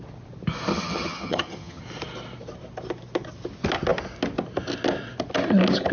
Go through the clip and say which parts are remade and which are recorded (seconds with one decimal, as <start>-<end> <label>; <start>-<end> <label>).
0.0-0.7 recorded; 0.7-1.8 remade; 1.8-5.9 recorded

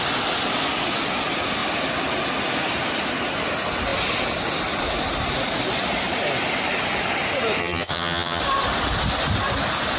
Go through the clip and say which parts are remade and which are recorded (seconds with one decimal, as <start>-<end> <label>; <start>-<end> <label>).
0.0-7.6 recorded; 7.6-8.4 remade; 8.4-10.0 recorded